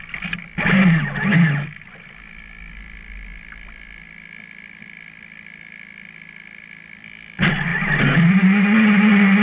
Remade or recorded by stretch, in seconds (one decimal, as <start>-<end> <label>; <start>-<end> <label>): 0.0-9.4 recorded